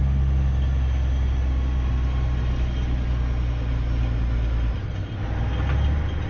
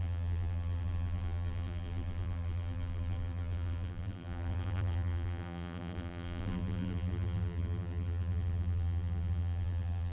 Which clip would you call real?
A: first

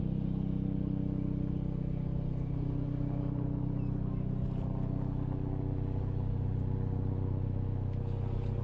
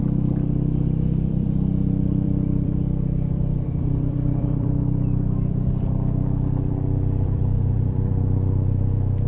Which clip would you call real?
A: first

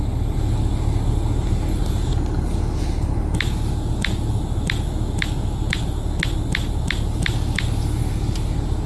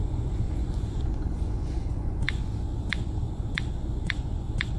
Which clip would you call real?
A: first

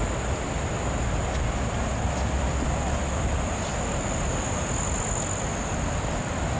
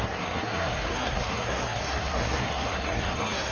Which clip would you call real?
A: first